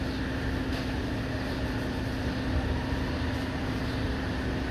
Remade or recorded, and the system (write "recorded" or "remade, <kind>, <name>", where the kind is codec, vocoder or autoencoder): recorded